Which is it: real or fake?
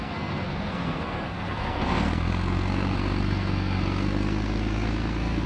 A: fake